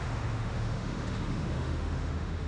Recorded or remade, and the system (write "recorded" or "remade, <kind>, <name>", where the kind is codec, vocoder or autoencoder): remade, autoencoder, DAC-VAE